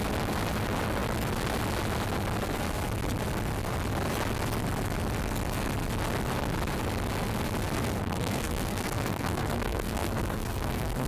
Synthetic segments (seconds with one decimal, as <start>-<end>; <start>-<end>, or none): 8.0-11.1

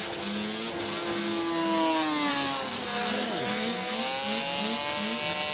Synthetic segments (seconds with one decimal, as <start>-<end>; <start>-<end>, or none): 2.3-4.0

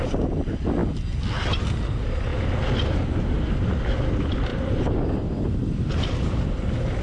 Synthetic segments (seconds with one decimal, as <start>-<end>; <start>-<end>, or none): 4.5-6.4